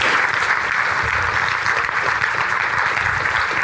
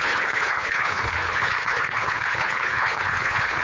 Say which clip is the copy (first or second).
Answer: second